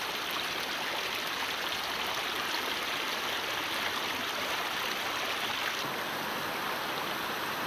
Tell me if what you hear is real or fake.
real